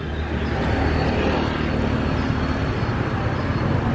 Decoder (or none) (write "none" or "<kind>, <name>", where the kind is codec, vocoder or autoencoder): none